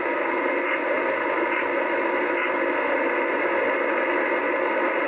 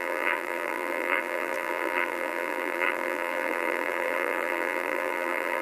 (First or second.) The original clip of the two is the first